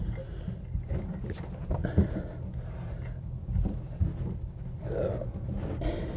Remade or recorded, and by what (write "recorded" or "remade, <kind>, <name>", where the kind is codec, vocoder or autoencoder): recorded